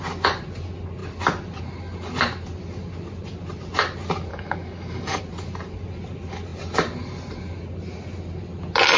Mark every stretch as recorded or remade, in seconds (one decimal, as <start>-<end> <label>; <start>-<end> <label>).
0.0-4.3 recorded; 4.3-5.2 remade; 5.2-9.0 recorded